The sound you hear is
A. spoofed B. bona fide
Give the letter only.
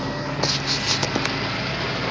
B